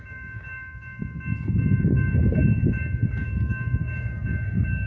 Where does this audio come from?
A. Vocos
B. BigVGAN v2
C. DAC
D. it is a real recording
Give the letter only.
C